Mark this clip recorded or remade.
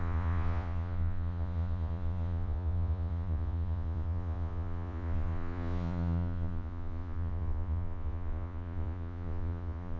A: remade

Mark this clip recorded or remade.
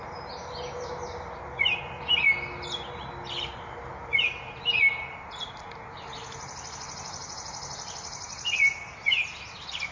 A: recorded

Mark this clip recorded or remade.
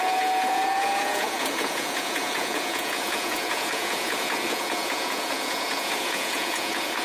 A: remade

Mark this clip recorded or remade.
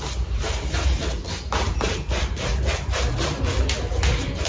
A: recorded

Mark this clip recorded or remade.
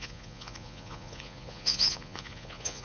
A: remade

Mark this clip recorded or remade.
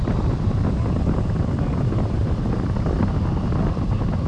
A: recorded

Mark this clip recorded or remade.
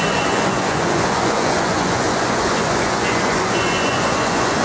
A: remade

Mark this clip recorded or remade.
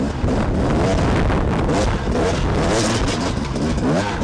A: recorded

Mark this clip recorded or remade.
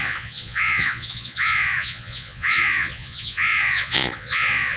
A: remade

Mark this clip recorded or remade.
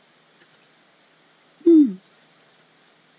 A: recorded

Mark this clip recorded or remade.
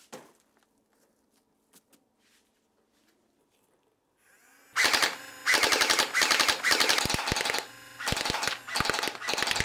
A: recorded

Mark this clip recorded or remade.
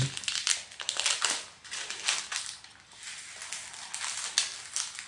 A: recorded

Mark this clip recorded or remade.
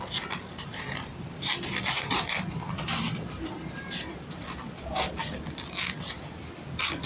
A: recorded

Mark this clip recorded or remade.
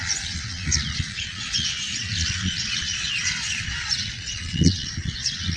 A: remade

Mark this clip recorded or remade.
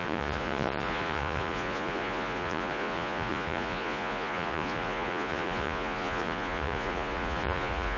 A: remade